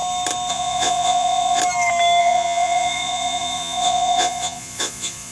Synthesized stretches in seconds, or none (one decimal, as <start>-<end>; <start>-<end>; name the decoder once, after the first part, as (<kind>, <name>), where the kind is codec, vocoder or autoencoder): 0.5-1.6 (vocoder, Vocos); 2.2-5.3